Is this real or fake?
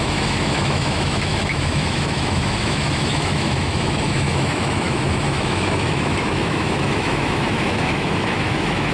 fake